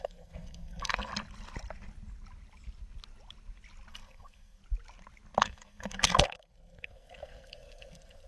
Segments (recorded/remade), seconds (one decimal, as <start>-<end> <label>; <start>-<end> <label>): 0.0-1.1 remade; 1.1-3.9 recorded; 3.9-4.6 remade; 4.6-5.4 recorded; 5.4-8.3 remade